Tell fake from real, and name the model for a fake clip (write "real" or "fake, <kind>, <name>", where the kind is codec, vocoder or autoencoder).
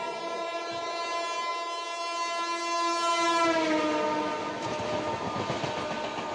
real